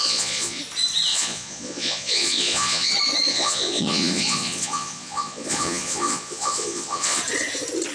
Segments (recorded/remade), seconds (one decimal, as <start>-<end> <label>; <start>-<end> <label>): 0.0-0.6 remade; 0.6-1.1 recorded; 1.1-2.9 remade; 2.9-3.3 recorded; 3.3-7.2 remade; 7.2-7.9 recorded